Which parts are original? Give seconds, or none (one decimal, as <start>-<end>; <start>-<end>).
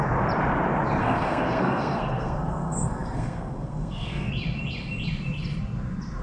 0.0-1.0; 4.3-6.2